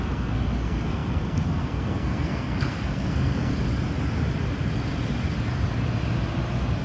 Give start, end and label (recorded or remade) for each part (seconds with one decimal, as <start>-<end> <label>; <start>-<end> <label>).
0.0-3.5 remade; 3.5-6.8 recorded

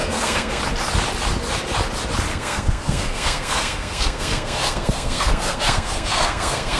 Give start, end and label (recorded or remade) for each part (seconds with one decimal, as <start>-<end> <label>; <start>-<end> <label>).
0.0-0.6 remade; 0.6-2.3 recorded; 2.3-6.8 remade

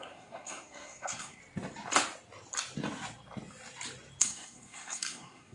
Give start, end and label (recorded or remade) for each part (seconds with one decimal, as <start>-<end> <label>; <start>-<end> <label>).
0.0-1.4 remade; 1.4-4.2 recorded; 4.2-5.5 remade

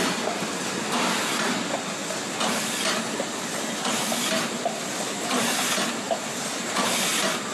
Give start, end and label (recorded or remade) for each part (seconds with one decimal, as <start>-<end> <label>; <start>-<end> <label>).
0.0-7.5 recorded